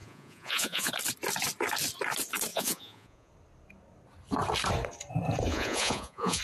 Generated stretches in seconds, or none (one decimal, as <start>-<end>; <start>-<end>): 0.0-0.9; 2.5-3.3; 5.5-6.4